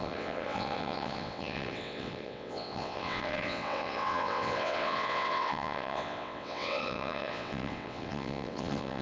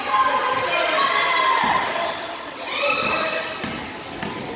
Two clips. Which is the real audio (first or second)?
second